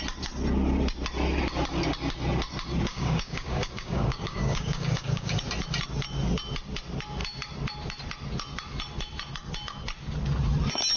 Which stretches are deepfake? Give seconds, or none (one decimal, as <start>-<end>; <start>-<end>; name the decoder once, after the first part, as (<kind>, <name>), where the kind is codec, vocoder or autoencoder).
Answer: 2.9-5.4 (codec, DAC)